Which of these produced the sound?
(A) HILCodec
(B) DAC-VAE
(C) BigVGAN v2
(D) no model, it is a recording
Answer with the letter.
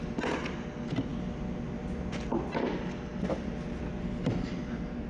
D